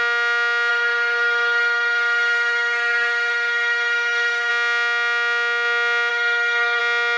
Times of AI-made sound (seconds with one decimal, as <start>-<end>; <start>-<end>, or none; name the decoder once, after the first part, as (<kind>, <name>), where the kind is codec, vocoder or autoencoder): 0.7-4.5 (codec, SNAC); 6.1-6.8